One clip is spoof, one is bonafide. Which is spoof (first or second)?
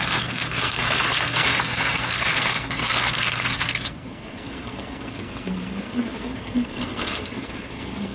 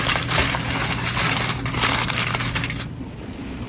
first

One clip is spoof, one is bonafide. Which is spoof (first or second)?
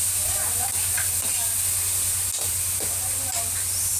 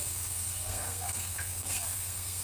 second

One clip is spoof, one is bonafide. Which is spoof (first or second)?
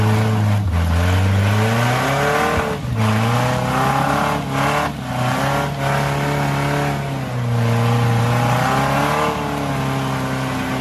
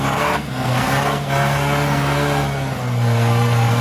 second